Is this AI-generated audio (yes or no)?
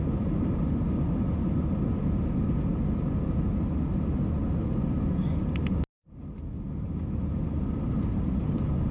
no